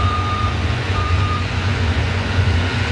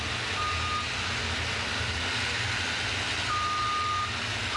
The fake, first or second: first